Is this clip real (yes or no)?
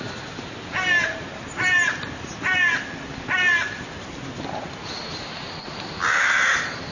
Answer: yes